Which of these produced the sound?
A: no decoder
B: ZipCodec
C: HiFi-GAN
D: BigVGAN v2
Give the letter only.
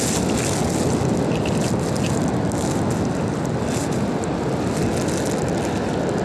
A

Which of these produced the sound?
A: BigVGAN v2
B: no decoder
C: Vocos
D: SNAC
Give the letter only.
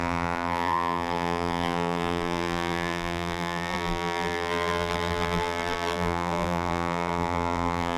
A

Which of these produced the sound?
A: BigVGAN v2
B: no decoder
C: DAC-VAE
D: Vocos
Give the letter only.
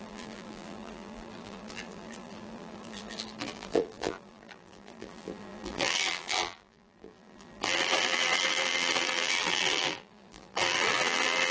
A